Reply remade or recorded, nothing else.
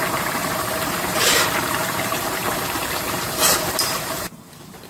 remade